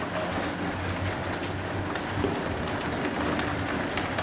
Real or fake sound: real